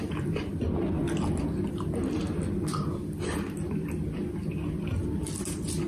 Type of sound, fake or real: real